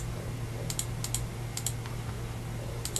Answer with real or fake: real